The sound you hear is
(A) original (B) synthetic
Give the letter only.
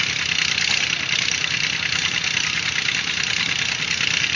A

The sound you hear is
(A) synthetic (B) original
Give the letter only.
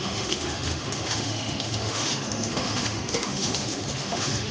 A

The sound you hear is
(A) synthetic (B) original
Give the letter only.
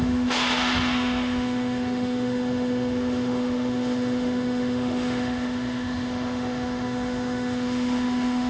A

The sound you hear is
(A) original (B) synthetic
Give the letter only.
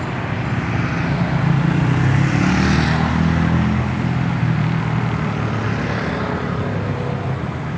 A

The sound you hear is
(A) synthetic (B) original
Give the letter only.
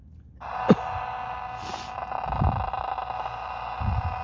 B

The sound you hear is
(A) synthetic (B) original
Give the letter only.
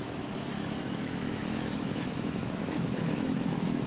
A